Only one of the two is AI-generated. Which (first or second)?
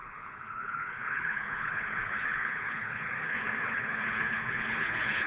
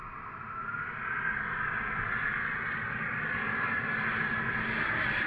first